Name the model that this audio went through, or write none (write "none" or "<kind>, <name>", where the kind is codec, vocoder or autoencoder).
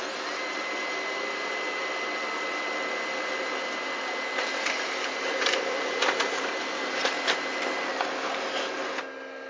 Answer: none